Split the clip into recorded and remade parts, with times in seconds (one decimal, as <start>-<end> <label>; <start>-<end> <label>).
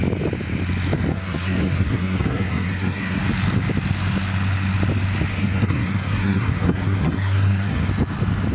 0.0-1.1 recorded; 1.1-3.2 remade; 3.2-5.3 recorded; 5.3-7.9 remade; 7.9-8.5 recorded